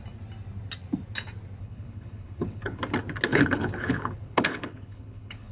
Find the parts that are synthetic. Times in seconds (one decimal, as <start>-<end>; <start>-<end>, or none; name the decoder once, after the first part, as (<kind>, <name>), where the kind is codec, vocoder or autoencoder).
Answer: 1.6-2.8 (codec, HILCodec); 3.3-5.5